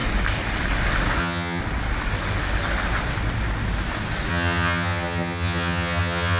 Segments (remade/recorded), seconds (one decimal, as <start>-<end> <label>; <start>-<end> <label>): 0.0-1.2 recorded; 1.2-1.6 remade; 1.6-4.3 recorded; 4.3-6.4 remade